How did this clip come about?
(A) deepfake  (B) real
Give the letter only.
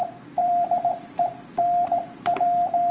A